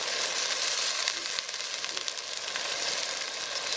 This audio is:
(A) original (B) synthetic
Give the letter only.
A